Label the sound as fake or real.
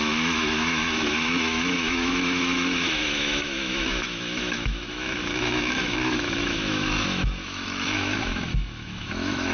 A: fake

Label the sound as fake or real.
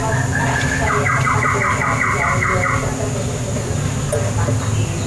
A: real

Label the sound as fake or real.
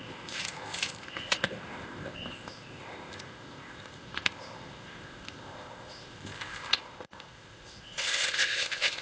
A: fake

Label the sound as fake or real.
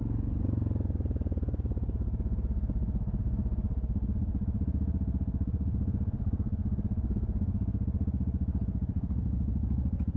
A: real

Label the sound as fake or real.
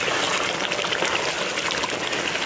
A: real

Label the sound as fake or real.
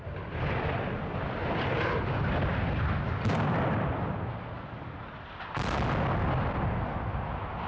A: real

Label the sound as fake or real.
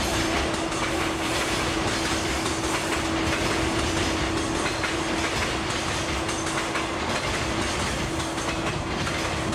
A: real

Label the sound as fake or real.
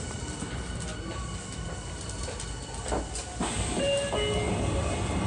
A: real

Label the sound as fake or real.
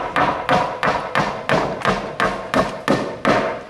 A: real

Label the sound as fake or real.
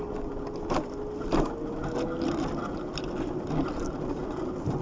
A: real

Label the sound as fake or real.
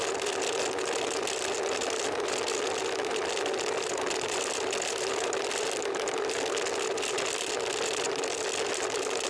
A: real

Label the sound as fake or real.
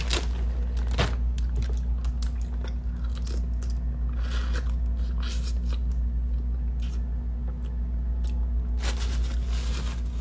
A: real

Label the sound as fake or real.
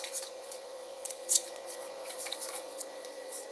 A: fake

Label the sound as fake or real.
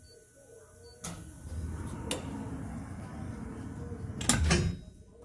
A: real